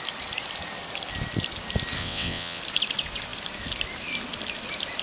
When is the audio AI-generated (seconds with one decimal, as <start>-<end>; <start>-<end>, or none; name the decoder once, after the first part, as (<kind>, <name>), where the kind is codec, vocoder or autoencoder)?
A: 2.0-2.6 (vocoder, WaveNeXt)